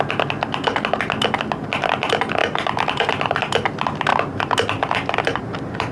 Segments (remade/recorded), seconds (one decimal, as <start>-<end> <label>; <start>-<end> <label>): 0.0-5.9 recorded